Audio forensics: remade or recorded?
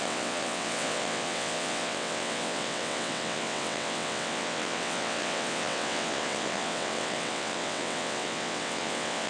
remade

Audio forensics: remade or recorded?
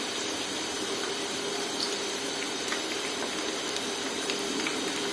recorded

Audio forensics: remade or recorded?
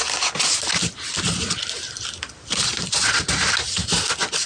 recorded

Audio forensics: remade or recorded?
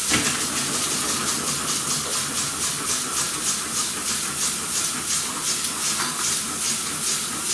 recorded